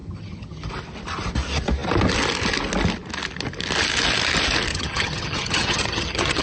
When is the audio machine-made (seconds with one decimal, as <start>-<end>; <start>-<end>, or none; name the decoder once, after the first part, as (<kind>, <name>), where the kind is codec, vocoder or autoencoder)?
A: 0.0-0.7 (vocoder, HiFi-GAN); 4.7-6.4